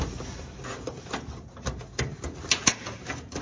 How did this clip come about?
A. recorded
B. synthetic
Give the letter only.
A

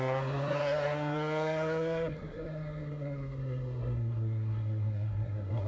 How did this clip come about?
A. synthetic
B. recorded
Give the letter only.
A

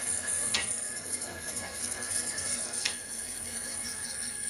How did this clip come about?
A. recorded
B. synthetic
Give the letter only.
B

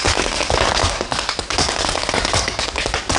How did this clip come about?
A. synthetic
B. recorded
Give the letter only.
A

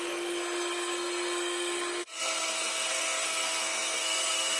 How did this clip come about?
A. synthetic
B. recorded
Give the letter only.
A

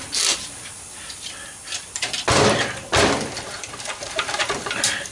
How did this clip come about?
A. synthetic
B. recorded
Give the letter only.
A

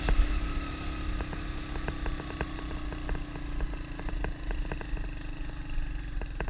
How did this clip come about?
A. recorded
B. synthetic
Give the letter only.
A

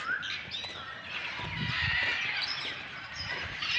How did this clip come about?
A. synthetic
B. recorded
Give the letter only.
B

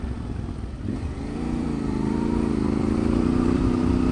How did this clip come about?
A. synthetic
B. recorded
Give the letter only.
A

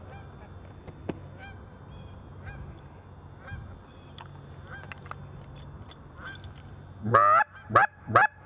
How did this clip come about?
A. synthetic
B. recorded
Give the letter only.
B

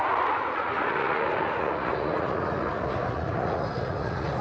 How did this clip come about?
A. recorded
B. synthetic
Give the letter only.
B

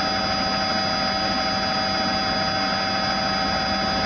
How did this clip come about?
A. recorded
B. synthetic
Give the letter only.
A